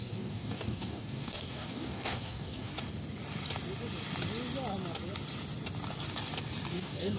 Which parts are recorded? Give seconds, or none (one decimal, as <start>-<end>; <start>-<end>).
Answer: 2.7-6.7